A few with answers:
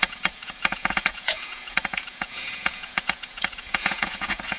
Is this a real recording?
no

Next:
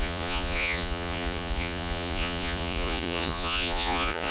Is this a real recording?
no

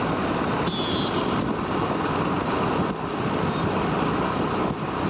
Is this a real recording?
yes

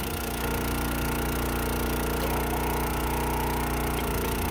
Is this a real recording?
yes